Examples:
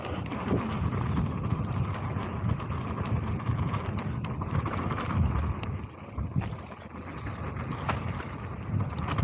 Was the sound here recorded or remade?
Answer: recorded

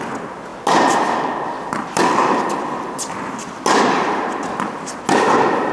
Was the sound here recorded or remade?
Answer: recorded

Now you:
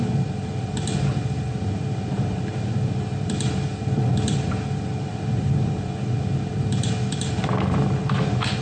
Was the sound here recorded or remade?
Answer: remade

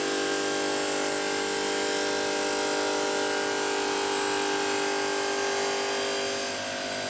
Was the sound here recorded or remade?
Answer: recorded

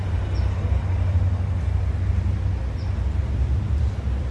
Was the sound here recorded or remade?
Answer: recorded